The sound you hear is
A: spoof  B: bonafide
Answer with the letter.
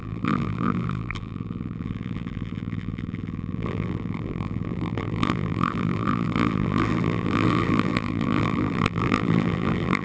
A